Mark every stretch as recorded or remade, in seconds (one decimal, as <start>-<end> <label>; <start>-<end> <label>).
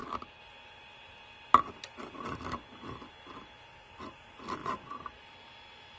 0.0-6.0 recorded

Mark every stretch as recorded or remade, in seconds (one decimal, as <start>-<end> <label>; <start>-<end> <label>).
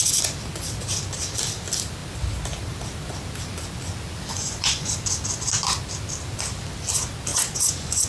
0.0-4.3 recorded; 4.3-4.9 remade; 4.9-7.3 recorded; 7.3-8.1 remade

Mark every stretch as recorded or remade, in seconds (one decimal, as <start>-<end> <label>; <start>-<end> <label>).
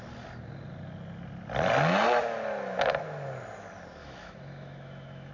0.0-4.0 recorded; 4.0-5.3 remade